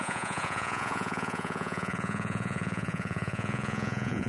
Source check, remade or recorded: remade